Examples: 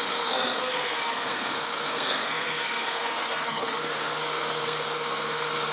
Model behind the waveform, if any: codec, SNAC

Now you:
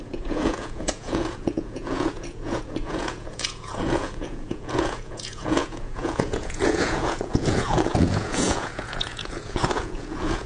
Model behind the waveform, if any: vocoder, Vocos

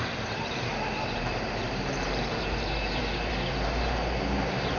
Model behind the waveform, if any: vocoder, BigVGAN v2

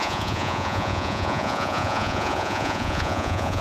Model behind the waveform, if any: vocoder, Vocos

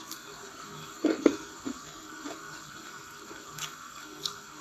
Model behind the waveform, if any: codec, SNAC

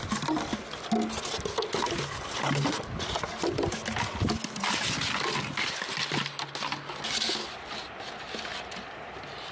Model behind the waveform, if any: none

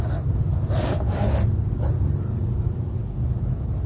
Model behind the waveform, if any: none